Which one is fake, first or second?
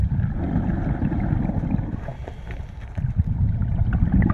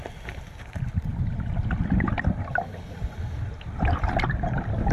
second